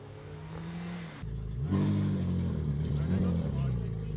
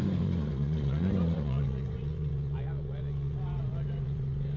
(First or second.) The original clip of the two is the first